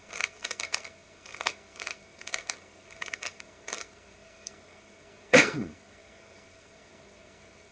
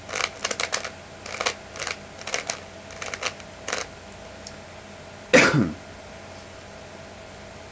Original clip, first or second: second